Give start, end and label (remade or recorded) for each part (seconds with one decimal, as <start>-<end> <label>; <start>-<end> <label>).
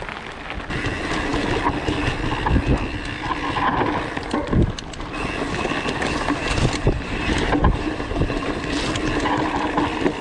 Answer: 0.0-6.4 recorded; 6.4-8.6 remade; 8.6-10.2 recorded